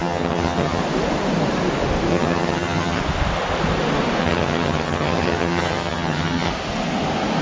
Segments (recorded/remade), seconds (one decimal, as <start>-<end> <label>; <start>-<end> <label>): 0.0-0.8 remade; 0.8-2.1 recorded; 2.1-3.0 remade; 3.0-4.2 recorded; 4.2-6.5 remade; 6.5-7.4 recorded